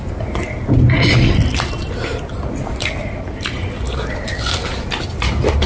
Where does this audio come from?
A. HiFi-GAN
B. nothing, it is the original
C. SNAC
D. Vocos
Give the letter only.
B